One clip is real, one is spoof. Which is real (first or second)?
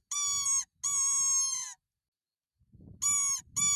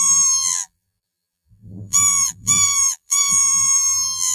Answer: first